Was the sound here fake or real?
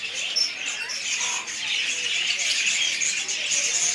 real